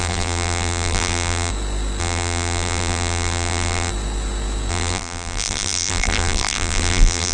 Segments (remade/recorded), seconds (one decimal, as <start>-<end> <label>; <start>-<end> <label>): 0.0-1.5 remade; 1.5-2.0 recorded; 2.0-3.9 remade; 3.9-4.7 recorded; 4.7-7.3 remade